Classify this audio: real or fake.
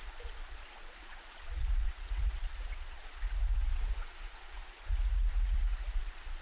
fake